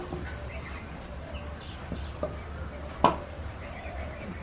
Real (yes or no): yes